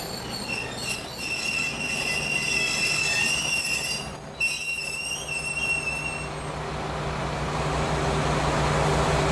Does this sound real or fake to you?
real